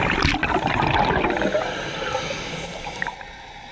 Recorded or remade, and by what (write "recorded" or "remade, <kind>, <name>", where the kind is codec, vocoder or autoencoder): recorded